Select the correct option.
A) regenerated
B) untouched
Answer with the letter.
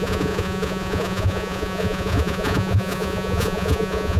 A